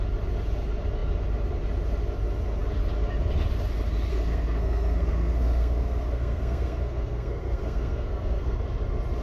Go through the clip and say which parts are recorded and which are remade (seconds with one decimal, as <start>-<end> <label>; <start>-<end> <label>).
0.0-4.1 recorded; 4.1-8.6 remade; 8.6-9.2 recorded